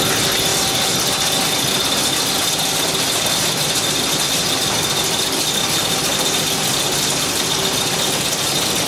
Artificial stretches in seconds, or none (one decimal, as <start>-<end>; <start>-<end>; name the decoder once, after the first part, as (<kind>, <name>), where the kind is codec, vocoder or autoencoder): none